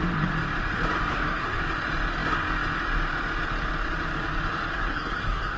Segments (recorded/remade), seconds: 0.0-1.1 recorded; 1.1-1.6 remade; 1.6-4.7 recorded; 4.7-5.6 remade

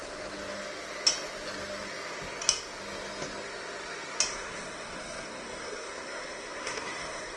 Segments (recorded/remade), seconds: 0.0-4.3 recorded; 4.3-7.4 remade